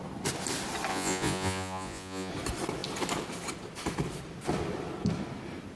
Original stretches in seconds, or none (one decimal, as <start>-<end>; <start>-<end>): 0.0-0.9; 2.3-5.8